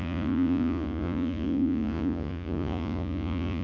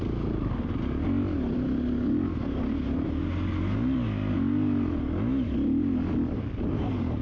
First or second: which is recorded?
second